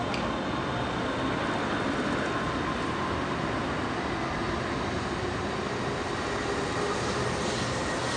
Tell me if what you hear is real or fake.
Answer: real